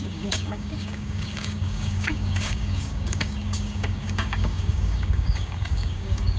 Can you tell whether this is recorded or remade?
remade